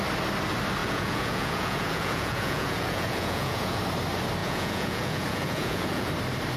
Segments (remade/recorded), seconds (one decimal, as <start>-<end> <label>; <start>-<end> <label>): 0.0-0.8 recorded; 0.8-3.8 remade; 3.8-4.4 recorded; 4.4-6.1 remade; 6.1-6.6 recorded